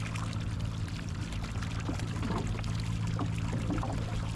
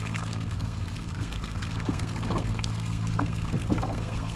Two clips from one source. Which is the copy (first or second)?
second